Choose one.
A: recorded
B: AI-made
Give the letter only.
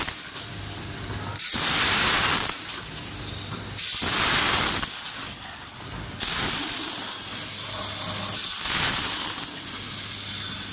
A